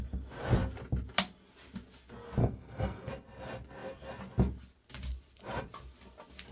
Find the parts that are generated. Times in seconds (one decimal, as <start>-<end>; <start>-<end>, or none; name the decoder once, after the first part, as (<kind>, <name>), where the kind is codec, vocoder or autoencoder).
2.4-3.1 (codec, SNAC)

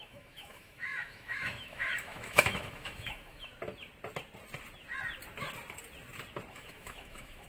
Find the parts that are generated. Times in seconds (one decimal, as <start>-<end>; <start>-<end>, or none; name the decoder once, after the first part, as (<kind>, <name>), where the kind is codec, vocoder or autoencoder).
0.0-3.5 (autoencoder, DAC-VAE); 6.5-7.5